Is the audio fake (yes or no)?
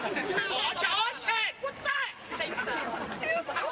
no